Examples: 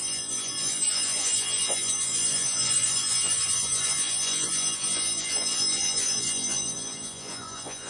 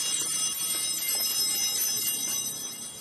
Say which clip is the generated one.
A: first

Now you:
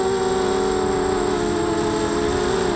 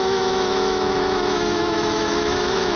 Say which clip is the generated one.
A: second